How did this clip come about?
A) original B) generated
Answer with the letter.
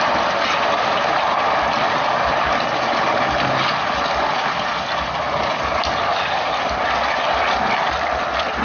A